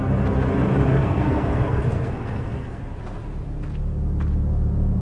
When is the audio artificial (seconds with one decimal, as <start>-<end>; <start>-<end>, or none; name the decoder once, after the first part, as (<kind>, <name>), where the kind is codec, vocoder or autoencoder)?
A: 0.9-2.8 (codec, SNAC)